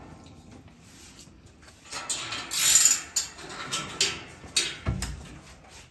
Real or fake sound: real